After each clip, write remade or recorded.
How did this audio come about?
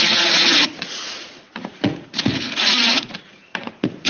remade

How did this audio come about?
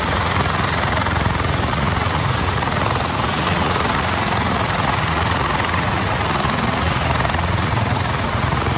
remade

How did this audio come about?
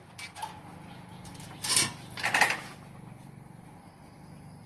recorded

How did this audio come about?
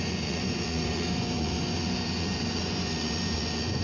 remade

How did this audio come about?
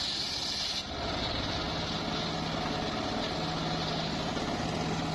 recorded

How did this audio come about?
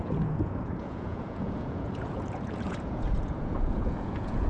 remade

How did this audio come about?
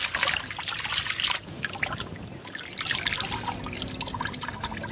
recorded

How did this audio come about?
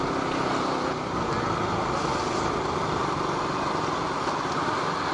recorded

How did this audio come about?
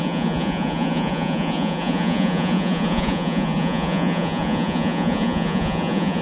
remade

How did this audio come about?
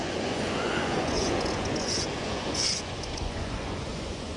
remade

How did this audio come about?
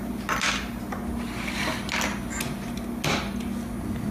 recorded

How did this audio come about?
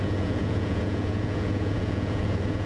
remade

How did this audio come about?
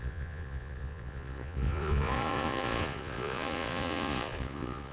remade